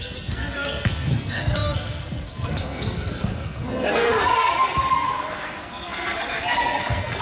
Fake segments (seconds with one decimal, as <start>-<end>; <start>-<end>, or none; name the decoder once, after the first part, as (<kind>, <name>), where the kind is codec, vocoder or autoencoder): 0.0-7.2 (codec, SNAC)